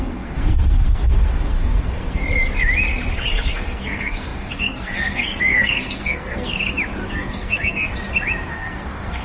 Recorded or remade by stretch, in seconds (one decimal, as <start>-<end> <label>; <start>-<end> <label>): 0.0-2.2 remade; 2.2-3.3 recorded; 3.3-6.6 remade; 6.6-7.1 recorded; 7.1-7.9 remade; 7.9-8.5 recorded; 8.5-9.2 remade